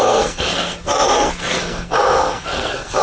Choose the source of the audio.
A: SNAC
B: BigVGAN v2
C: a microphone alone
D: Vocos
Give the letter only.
A